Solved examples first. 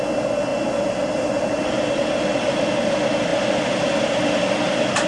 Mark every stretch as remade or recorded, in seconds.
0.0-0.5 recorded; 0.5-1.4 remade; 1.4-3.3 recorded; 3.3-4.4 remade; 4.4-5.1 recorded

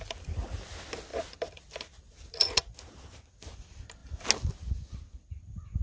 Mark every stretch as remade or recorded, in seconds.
0.0-5.8 recorded

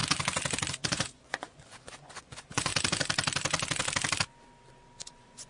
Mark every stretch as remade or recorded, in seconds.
0.0-0.7 recorded; 0.7-2.7 remade; 2.7-5.1 recorded; 5.1-5.5 remade

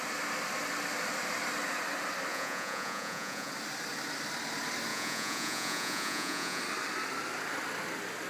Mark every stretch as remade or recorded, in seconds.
0.0-2.3 recorded; 2.3-3.5 remade; 3.5-4.9 recorded; 4.9-6.6 remade; 6.6-8.3 recorded

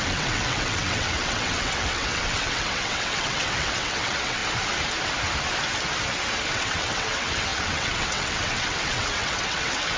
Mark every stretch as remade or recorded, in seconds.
0.0-4.4 remade; 4.4-6.5 recorded; 6.5-10.0 remade

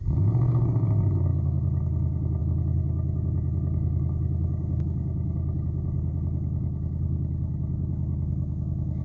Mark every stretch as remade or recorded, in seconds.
0.0-9.0 remade

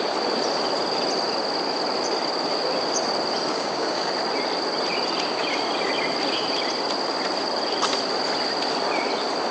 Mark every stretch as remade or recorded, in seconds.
0.0-3.5 recorded; 3.5-4.1 remade; 4.1-9.5 recorded